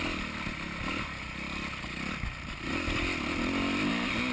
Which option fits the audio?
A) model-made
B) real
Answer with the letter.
B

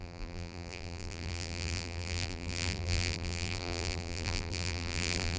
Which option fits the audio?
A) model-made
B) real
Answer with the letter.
A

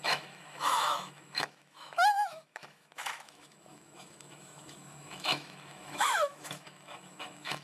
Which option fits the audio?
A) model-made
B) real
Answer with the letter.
A